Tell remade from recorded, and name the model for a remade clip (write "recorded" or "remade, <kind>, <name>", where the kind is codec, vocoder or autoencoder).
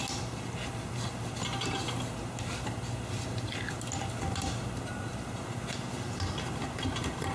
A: recorded